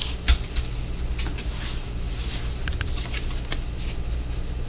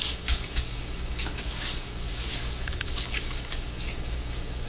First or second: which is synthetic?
second